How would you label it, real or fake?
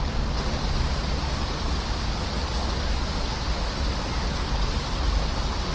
real